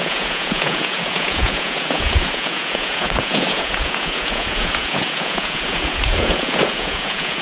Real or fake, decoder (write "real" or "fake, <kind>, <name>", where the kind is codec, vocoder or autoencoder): fake, vocoder, Vocos